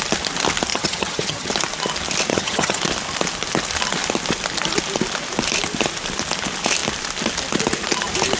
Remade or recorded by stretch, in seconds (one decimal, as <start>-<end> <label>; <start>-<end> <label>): 0.0-0.7 recorded; 0.7-1.5 remade; 1.5-2.3 recorded; 2.3-2.8 remade; 2.8-8.4 recorded